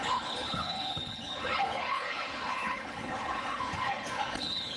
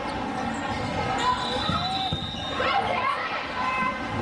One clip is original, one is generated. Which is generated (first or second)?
first